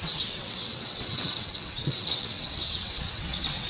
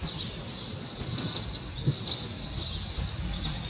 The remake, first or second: first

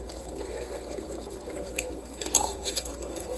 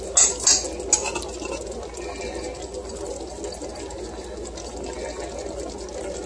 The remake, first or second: first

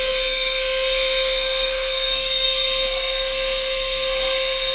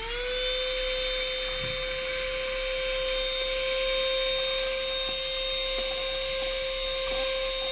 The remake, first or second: first